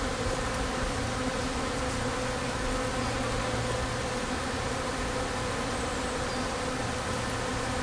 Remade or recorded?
recorded